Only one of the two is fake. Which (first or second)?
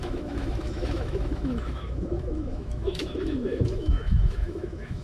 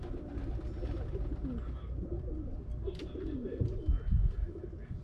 first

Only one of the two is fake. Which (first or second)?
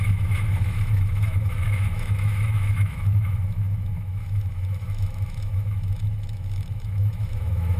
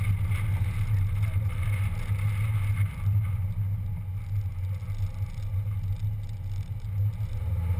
first